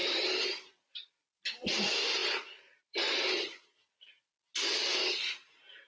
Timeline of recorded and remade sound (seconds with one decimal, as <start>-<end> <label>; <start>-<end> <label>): 0.0-2.2 recorded; 2.2-3.1 remade; 3.1-5.9 recorded